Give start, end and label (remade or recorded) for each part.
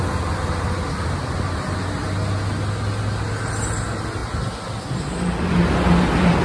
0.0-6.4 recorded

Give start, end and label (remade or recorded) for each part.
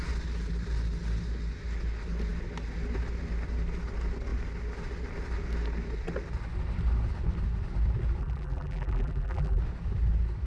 0.0-8.2 recorded; 8.2-9.6 remade; 9.6-10.5 recorded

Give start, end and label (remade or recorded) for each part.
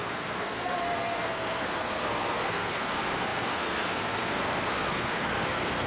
0.0-5.9 remade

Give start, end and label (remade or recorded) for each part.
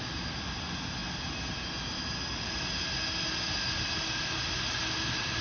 0.0-5.4 recorded